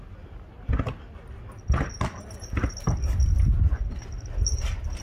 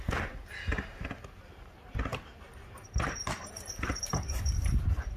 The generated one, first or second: second